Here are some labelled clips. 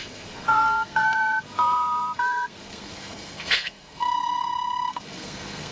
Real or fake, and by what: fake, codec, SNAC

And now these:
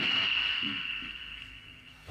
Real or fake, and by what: fake, codec, SNAC